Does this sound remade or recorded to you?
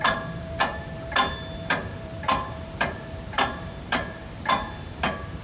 remade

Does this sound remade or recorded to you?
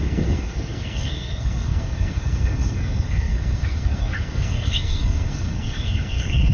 remade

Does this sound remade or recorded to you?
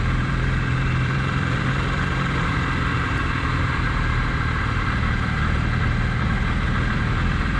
remade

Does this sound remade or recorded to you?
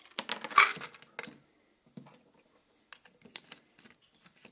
recorded